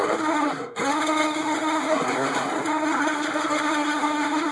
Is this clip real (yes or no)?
no